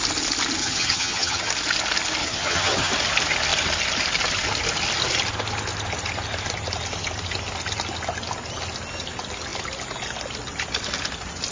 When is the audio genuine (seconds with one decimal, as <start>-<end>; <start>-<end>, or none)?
0.0-0.6; 1.5-2.2; 2.9-11.5

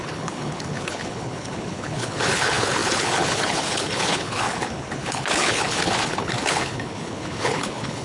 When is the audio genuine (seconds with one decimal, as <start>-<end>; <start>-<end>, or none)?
none

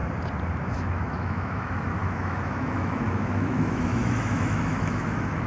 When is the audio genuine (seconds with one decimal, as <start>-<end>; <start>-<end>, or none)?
0.0-0.6